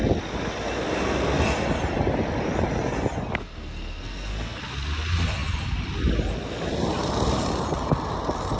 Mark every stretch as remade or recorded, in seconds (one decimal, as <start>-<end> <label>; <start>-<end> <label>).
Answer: 0.0-3.4 recorded; 3.4-4.6 remade; 4.6-8.6 recorded